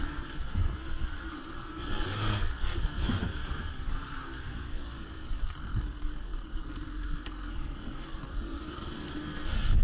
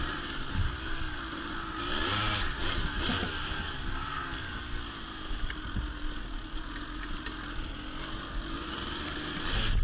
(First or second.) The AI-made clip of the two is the first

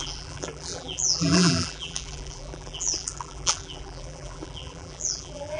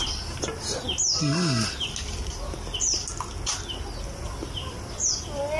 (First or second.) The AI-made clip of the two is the first